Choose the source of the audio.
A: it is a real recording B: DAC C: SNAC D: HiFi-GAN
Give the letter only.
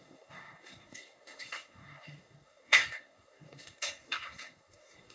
C